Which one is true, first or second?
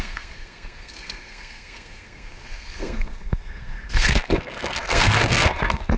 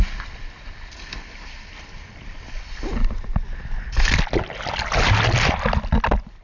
second